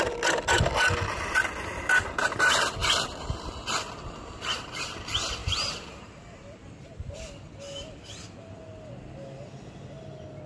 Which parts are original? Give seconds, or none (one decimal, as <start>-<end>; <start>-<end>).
0.0-5.4; 7.1-10.5